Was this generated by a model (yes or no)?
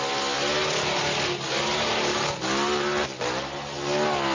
no